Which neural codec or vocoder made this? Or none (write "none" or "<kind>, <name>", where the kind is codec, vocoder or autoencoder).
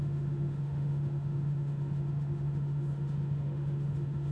autoencoder, DAC-VAE